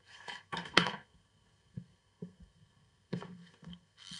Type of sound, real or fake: fake